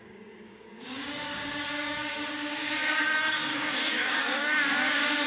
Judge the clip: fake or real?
fake